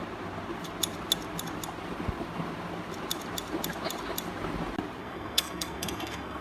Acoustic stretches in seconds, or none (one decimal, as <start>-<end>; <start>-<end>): 0.0-5.0